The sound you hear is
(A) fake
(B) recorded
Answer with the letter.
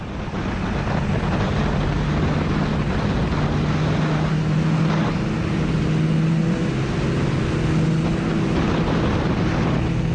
B